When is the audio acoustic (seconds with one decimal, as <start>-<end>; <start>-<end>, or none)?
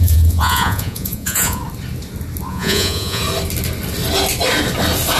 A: 1.6-2.5; 3.2-5.2